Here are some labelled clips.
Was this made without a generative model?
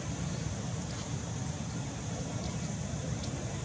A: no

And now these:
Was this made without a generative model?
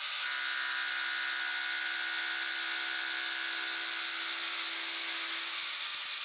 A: yes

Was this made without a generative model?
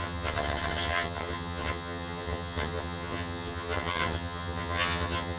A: no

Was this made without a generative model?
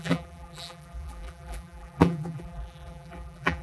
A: no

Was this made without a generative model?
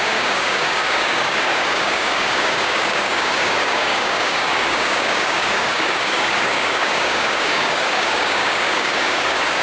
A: no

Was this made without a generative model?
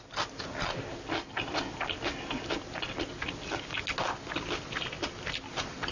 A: yes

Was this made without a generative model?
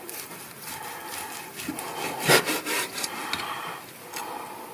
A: no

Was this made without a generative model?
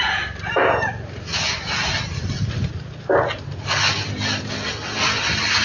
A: yes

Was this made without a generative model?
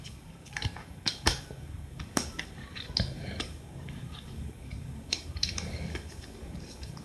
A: no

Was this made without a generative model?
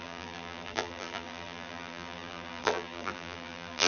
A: no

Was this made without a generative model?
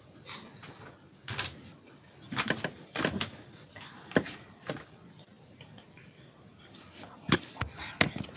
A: yes